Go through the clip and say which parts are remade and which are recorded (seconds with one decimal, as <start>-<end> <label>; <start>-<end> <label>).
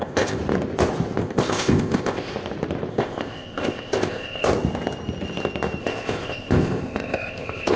0.0-0.4 remade; 0.4-1.2 recorded; 1.2-2.3 remade; 2.3-2.9 recorded; 2.9-4.5 remade; 4.5-5.8 recorded; 5.8-7.8 remade